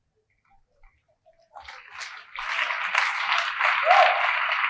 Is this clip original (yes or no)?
yes